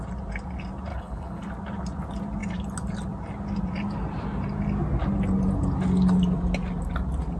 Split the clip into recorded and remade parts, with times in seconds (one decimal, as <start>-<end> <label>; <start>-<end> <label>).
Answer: 0.0-0.9 recorded; 0.9-1.5 remade; 1.5-7.4 recorded